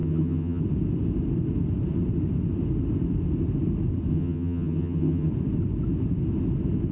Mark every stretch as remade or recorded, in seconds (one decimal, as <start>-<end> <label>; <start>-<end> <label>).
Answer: 0.0-0.6 remade; 0.6-4.1 recorded; 4.1-5.3 remade; 5.3-6.9 recorded